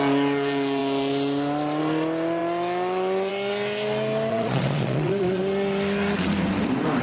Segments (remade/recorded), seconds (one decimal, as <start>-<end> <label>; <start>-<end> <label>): 0.0-4.3 recorded; 4.3-5.4 remade; 5.4-7.0 recorded